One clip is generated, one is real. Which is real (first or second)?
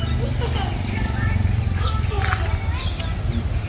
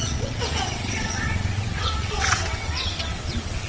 first